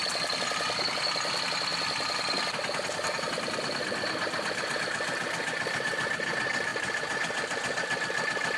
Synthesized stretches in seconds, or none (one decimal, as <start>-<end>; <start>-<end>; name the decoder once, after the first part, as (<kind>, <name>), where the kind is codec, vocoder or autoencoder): none